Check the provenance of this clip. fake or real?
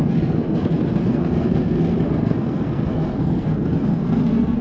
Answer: fake